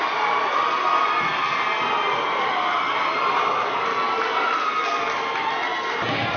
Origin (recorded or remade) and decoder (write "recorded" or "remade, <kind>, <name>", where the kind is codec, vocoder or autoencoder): recorded